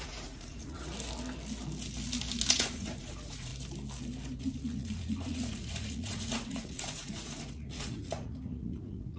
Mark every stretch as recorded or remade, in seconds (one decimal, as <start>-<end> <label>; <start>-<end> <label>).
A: 0.0-0.9 remade; 0.9-2.5 recorded; 2.5-3.5 remade; 3.5-4.4 recorded; 4.4-9.2 remade